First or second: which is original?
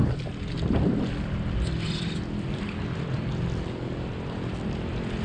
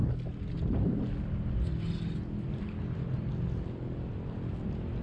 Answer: second